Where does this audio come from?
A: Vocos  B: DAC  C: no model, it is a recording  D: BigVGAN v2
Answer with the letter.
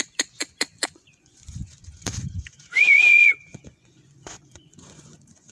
A